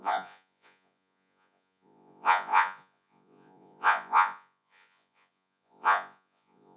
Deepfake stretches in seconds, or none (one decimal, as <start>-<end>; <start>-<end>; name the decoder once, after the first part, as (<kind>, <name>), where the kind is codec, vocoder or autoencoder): 0.0-6.8 (vocoder, Vocos)